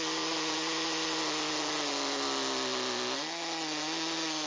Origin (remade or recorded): recorded